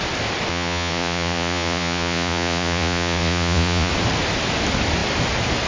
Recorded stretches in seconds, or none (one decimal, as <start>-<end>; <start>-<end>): 0.0-0.5; 3.9-5.7